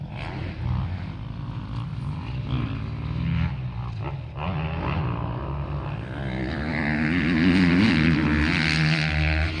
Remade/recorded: recorded